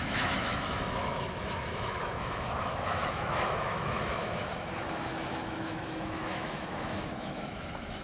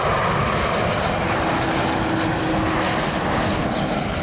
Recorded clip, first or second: second